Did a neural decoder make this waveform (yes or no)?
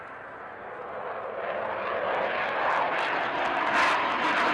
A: no